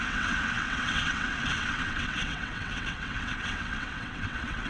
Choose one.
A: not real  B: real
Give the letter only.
A